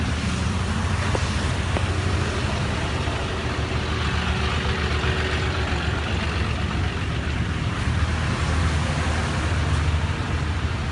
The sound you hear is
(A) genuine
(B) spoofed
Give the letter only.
A